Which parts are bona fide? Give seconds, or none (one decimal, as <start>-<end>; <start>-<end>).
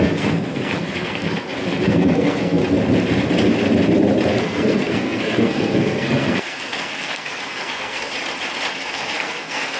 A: 2.6-4.4; 8.1-8.7